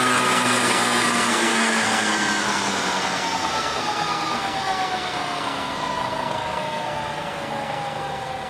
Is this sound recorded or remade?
remade